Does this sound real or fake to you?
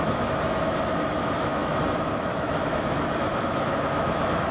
fake